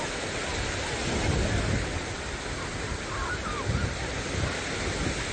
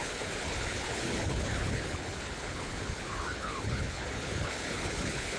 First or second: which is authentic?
first